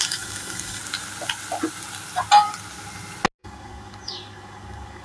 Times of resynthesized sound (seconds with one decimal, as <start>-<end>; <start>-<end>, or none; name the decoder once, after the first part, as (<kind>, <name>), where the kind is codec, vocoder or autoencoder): 0.0-0.8 (codec, DAC); 3.4-5.0